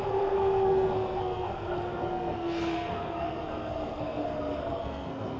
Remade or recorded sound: remade